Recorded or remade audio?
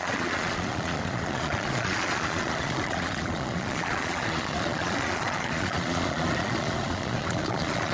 remade